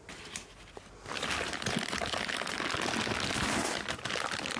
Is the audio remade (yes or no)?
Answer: no